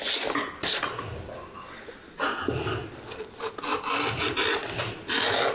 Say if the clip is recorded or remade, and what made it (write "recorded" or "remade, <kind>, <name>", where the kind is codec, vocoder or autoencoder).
recorded